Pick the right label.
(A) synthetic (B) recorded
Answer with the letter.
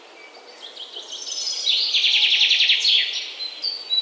B